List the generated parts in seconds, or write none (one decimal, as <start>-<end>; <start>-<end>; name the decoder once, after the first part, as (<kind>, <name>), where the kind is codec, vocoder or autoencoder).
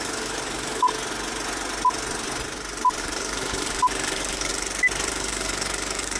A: 0.0-0.9 (codec, DAC); 3.0-4.5; 5.1-6.2